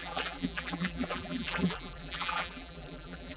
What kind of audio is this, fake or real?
fake